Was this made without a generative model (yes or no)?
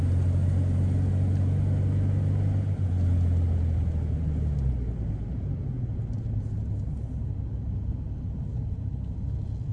yes